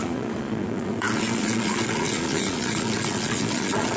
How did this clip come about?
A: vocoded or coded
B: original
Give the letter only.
A